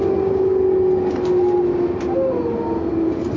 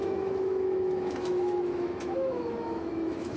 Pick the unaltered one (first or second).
first